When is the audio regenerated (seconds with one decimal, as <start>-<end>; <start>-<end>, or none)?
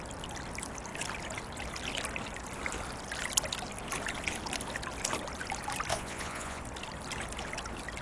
5.9-6.6